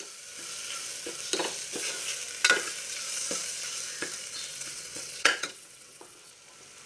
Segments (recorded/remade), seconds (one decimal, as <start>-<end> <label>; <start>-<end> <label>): 0.0-4.5 recorded; 4.5-6.3 remade; 6.3-6.9 recorded